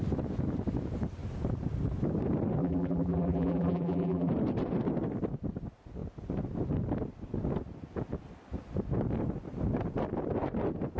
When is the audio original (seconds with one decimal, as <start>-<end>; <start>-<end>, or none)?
0.0-2.6; 4.3-11.0